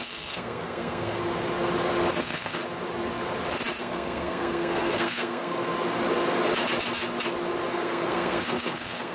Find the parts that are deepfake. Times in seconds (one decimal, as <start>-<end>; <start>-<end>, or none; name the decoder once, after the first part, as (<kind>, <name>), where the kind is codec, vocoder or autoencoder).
0.0-1.2 (codec, SNAC); 2.2-2.6; 3.8-5.7; 7.7-9.1